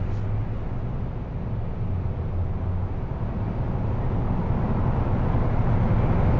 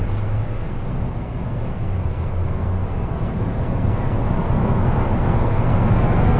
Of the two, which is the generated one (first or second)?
second